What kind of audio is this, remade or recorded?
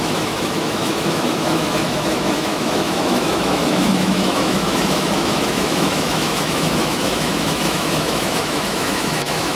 remade